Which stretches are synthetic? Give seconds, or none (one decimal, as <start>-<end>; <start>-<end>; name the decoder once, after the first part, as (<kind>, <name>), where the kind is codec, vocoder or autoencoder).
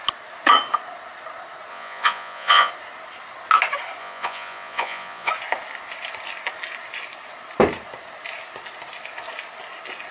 1.7-2.7 (vocoder, Vocos); 4.0-5.3